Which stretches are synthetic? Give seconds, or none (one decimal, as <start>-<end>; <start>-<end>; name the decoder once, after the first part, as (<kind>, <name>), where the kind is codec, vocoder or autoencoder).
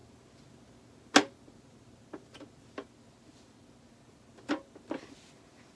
none